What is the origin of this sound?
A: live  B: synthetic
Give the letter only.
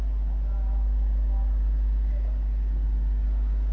A